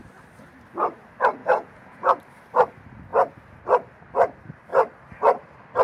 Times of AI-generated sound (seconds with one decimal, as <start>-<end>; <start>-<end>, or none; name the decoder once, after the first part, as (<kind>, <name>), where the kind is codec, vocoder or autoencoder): 1.4-2.2 (vocoder, Vocos)